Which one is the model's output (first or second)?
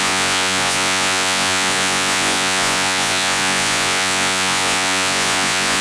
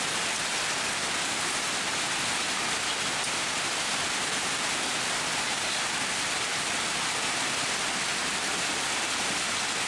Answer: first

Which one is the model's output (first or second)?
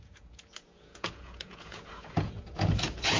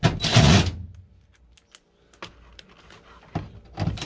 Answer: first